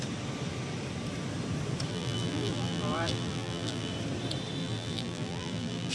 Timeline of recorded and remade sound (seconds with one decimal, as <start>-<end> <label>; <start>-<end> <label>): 0.0-1.9 recorded; 1.9-3.9 remade; 3.9-4.6 recorded; 4.6-5.9 remade